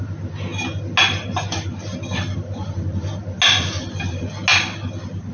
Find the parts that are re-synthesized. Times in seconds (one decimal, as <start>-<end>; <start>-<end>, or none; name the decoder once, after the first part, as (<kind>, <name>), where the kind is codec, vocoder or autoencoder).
none